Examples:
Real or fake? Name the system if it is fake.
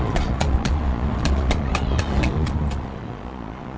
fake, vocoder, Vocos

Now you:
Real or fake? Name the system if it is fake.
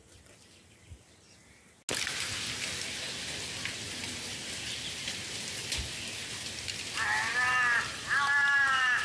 real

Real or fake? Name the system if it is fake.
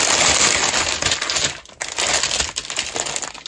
real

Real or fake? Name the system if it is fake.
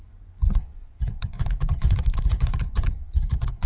fake, vocoder, Vocos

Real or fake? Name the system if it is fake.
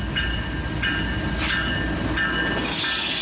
real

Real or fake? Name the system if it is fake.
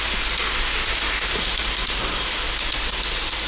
real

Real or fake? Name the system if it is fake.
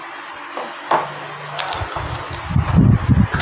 real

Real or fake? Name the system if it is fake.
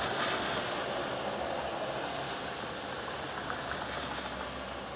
real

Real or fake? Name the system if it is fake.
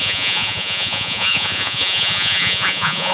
fake, vocoder, Vocos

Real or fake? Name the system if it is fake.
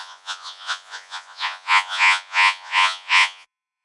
fake, vocoder, Vocos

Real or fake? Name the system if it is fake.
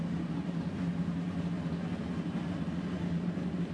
real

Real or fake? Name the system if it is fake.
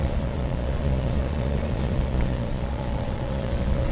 fake, vocoder, Vocos